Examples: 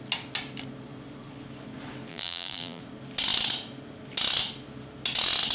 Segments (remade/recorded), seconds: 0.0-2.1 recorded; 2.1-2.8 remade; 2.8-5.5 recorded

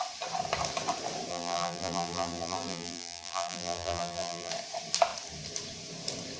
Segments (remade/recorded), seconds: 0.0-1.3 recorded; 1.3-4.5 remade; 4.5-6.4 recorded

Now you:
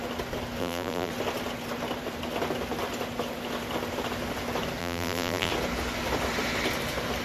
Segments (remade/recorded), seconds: 0.0-0.6 recorded; 0.6-1.1 remade; 1.1-4.8 recorded; 4.8-5.5 remade; 5.5-7.2 recorded

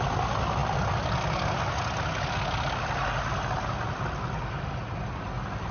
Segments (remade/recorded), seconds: 0.0-5.7 recorded